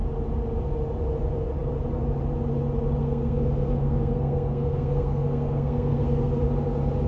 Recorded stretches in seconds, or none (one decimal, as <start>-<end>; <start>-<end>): 0.0-3.0; 6.3-7.1